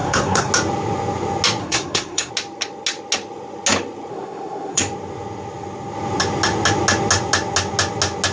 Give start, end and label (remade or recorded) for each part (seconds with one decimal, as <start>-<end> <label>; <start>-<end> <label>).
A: 0.0-0.5 remade; 0.5-1.6 recorded; 1.6-2.3 remade; 2.3-4.1 recorded; 4.1-4.8 remade; 4.8-8.3 recorded